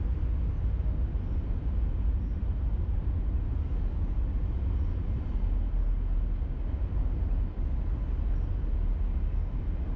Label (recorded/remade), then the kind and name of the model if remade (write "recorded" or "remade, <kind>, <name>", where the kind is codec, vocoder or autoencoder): recorded